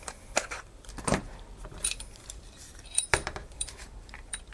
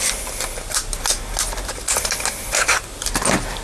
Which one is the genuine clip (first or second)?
second